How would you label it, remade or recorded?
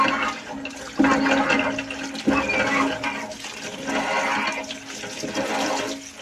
recorded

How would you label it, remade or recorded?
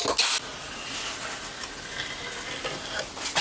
recorded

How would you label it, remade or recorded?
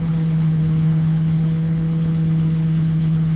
remade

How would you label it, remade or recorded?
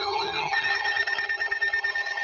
remade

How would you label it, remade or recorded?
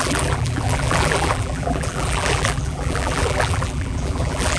remade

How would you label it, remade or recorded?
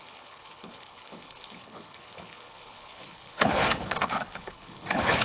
remade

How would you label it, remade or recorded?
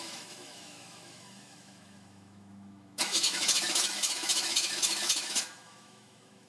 remade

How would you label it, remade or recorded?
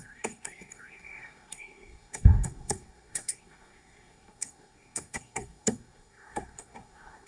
remade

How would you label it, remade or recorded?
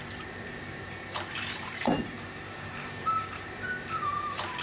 remade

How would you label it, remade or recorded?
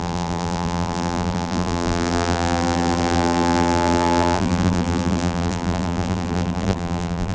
remade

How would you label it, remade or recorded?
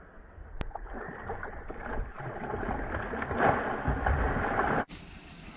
recorded